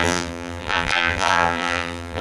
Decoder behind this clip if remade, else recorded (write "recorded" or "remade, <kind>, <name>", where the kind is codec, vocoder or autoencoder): remade, vocoder, BigVGAN v2